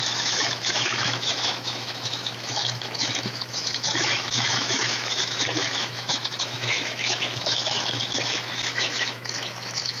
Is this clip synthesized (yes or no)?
yes